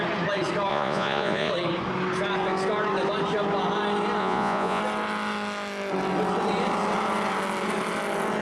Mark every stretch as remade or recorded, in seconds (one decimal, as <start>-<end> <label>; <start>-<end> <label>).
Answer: 0.0-0.7 recorded; 0.7-1.5 remade; 1.5-4.2 recorded; 4.2-4.8 remade; 4.8-8.4 recorded